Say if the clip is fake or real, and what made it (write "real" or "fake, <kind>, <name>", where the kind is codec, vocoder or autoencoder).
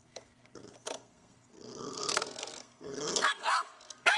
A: fake, codec, SNAC